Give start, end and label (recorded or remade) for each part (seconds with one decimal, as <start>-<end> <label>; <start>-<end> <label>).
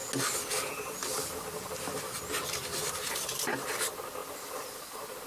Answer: 0.0-5.3 recorded